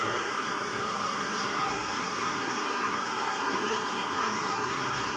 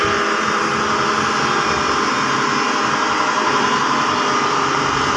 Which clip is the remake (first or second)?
first